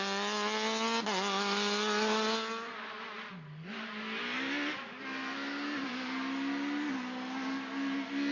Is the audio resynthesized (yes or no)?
no